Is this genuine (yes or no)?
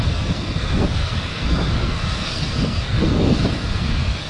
no